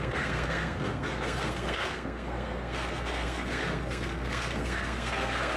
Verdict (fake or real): fake